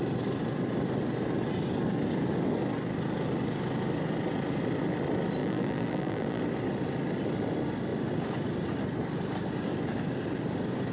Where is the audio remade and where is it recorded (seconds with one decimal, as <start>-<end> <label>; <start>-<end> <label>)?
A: 0.0-5.4 recorded; 5.4-6.4 remade; 6.4-10.9 recorded